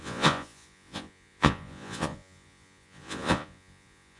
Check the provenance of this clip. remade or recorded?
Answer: remade